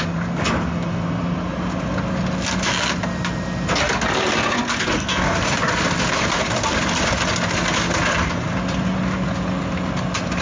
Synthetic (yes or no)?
no